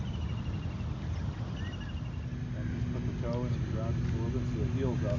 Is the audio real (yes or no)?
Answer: yes